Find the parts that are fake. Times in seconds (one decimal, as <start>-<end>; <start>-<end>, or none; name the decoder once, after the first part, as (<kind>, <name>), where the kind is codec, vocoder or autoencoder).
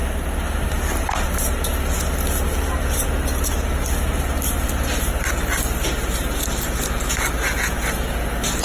none